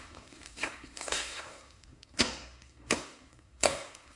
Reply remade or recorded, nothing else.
remade